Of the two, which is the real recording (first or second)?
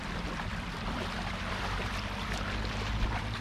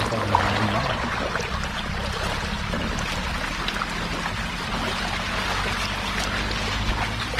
second